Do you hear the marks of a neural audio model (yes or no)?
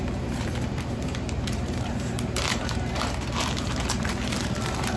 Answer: yes